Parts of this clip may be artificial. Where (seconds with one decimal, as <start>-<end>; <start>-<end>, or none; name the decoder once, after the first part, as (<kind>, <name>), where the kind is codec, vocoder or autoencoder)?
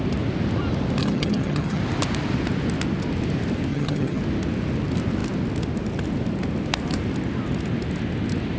1.0-1.8 (vocoder, HiFi-GAN); 3.7-4.2